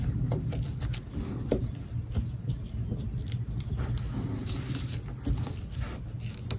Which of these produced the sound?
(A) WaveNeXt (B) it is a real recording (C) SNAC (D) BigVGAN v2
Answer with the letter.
B